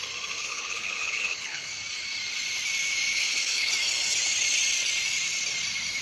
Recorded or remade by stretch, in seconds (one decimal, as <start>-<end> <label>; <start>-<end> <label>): 0.0-0.4 recorded; 0.4-1.7 remade; 1.7-3.1 recorded; 3.1-3.7 remade; 3.7-6.0 recorded